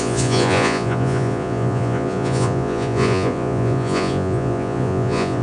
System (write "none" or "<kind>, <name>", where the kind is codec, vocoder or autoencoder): vocoder, Vocos